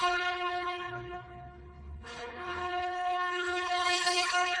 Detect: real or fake fake